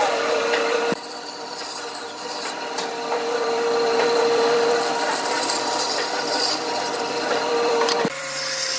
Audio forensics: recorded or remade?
remade